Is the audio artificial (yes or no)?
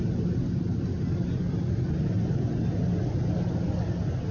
no